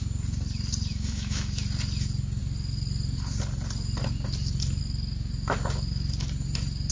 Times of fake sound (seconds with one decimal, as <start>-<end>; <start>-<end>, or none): 0.9-1.6